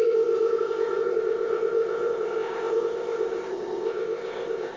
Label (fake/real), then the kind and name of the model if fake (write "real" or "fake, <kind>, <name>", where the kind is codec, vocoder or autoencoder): fake, codec, ZipCodec